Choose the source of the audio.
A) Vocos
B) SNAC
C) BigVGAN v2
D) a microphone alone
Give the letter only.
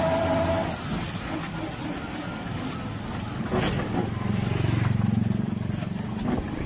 D